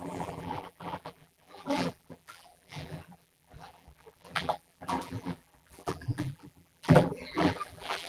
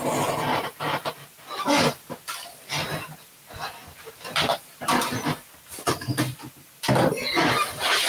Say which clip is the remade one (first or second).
first